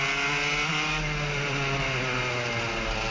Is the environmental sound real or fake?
real